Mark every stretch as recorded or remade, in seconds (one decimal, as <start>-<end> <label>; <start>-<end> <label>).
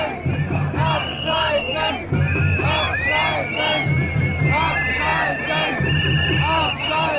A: 0.0-1.1 recorded; 1.1-1.9 remade; 1.9-7.2 recorded